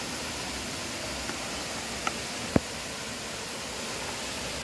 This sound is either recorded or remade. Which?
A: recorded